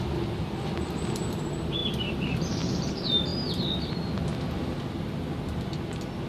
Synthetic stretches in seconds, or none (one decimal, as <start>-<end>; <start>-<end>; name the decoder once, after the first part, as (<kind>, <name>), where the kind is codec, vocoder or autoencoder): 1.8-2.9 (vocoder, BigVGAN v2)